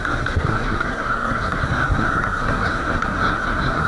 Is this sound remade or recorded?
remade